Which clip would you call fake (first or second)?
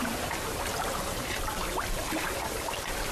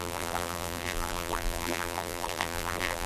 second